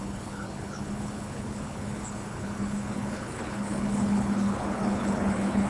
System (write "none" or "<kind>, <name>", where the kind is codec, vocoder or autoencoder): codec, HILCodec